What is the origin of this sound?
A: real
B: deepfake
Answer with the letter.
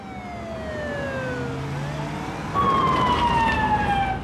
A